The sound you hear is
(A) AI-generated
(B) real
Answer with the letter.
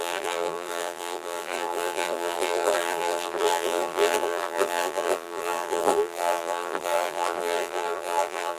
A